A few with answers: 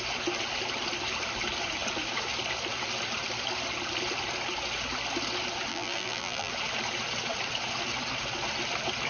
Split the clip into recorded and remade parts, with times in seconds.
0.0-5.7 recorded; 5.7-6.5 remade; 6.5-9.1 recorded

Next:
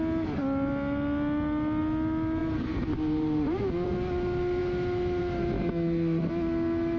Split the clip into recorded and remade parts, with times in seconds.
0.0-2.4 recorded; 2.4-3.7 remade; 3.7-7.0 recorded

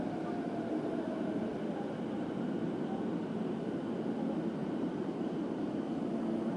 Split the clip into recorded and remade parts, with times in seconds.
0.0-4.6 recorded; 4.6-5.7 remade; 5.7-6.6 recorded